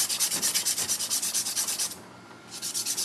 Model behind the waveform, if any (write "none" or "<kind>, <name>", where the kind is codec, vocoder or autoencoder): none